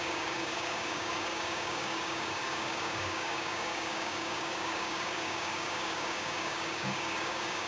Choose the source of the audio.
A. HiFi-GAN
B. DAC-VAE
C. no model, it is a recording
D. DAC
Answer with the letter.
D